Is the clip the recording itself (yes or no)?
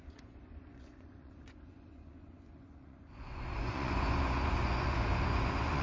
no